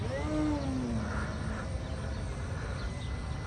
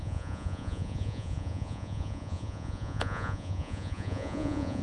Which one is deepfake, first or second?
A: second